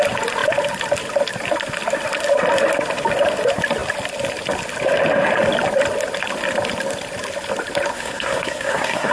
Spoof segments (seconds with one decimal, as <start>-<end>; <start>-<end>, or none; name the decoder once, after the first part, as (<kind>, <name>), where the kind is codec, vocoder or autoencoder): 7.9-9.1 (codec, SNAC)